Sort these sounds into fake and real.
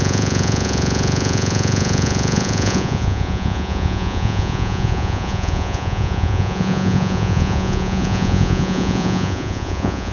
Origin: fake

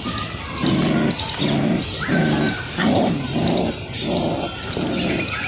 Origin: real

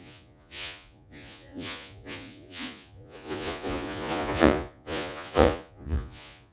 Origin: fake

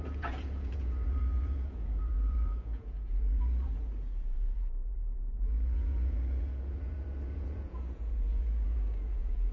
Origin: fake